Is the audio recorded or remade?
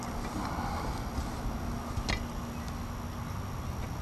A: recorded